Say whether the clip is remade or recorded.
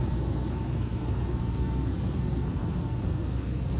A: remade